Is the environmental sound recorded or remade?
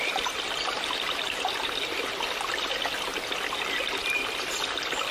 recorded